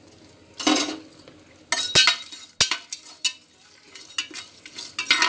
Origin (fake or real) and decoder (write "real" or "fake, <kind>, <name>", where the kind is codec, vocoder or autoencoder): real